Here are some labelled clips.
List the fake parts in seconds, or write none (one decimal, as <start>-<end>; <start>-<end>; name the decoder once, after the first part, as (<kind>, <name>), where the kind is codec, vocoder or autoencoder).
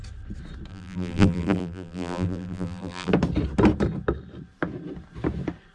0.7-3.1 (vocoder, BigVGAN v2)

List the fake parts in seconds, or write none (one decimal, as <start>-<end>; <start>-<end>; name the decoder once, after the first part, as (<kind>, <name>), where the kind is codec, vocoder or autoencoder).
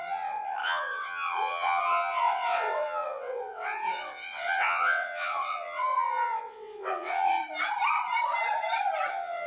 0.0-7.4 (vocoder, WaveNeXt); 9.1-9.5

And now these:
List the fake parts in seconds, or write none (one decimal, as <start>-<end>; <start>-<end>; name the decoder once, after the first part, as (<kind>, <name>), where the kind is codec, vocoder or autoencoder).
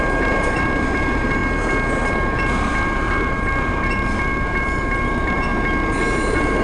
0.0-1.4 (vocoder, BigVGAN v2); 2.1-5.5; 6.1-6.6